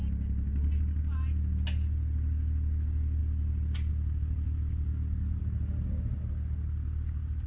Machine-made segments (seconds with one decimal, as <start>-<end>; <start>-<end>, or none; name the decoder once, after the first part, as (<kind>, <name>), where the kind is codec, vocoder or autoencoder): none